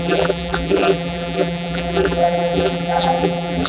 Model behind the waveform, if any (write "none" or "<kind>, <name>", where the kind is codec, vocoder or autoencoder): vocoder, BigVGAN v2